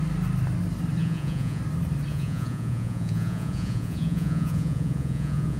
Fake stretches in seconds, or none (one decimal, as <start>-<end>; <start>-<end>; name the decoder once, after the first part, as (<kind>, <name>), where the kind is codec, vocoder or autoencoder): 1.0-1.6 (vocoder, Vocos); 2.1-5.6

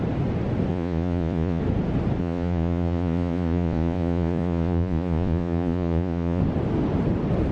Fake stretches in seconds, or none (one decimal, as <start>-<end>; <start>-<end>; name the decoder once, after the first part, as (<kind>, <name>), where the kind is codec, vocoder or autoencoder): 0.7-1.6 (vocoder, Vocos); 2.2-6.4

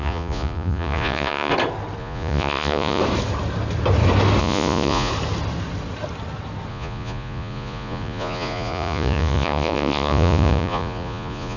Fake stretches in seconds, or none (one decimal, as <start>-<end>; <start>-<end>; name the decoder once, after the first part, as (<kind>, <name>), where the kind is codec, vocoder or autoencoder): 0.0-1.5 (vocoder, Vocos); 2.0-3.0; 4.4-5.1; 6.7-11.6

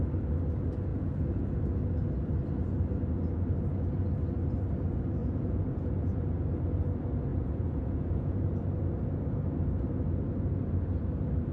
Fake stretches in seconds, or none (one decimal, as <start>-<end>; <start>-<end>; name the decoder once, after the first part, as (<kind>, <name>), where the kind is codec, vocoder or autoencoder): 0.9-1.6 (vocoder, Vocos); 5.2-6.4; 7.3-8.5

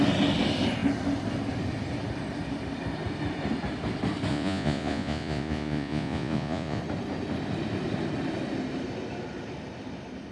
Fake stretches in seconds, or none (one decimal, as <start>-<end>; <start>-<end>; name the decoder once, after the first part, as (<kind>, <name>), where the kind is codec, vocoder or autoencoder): 4.3-6.8 (vocoder, Vocos)